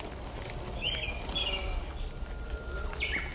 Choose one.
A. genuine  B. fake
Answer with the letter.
A